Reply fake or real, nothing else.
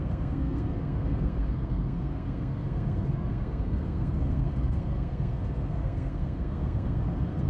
fake